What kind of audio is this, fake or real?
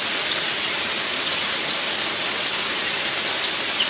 real